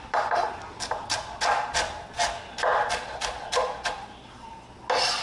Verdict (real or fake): real